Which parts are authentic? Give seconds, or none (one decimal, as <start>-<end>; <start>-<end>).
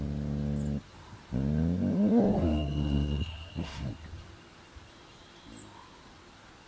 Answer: 0.0-2.3; 3.9-6.7